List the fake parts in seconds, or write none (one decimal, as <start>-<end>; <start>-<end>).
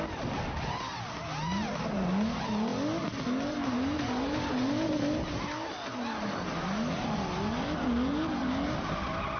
none